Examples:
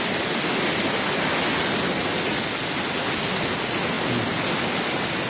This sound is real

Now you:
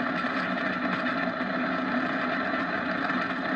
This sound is real